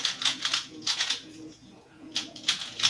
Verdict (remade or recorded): remade